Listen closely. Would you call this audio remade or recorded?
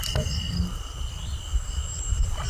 remade